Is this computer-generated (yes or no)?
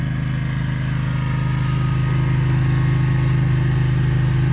no